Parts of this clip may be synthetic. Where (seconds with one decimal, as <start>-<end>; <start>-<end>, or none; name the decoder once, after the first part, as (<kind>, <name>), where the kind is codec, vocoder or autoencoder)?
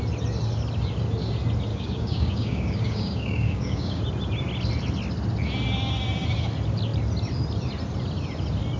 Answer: 1.7-4.0 (codec, DAC)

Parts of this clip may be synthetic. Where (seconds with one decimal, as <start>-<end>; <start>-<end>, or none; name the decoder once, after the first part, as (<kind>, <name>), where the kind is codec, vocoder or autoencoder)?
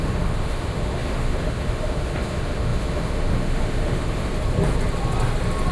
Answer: 0.0-4.3 (autoencoder, DAC-VAE)